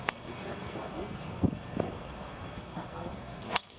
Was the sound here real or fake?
fake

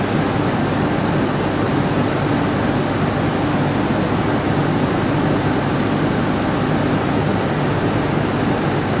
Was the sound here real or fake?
real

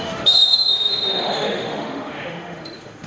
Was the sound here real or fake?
fake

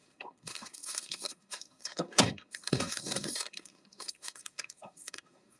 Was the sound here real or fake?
fake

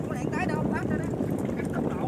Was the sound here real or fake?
real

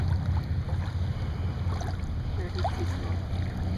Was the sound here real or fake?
real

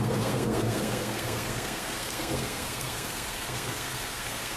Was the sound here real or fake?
fake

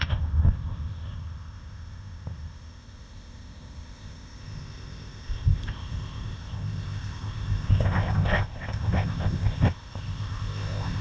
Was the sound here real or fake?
fake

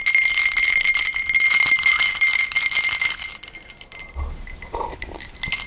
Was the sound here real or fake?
real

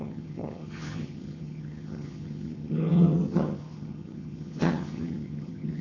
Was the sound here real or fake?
fake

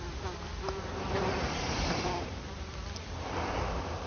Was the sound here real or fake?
fake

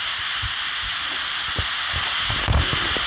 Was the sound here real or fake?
real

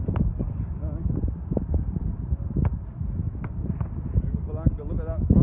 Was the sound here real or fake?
real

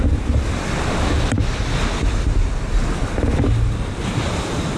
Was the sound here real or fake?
real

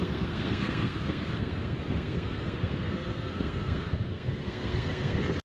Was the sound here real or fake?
fake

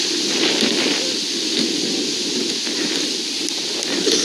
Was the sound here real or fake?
real